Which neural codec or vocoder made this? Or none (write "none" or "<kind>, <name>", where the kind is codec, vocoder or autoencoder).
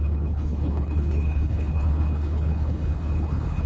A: codec, HILCodec